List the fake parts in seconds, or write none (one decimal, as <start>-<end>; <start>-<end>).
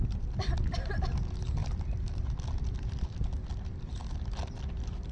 1.6-5.1